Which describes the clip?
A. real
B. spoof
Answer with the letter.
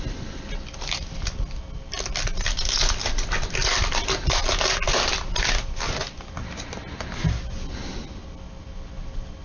A